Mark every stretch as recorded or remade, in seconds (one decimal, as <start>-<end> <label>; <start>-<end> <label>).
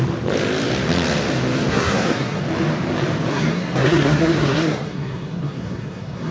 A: 0.0-1.7 recorded; 1.7-2.4 remade; 2.4-3.3 recorded; 3.3-6.3 remade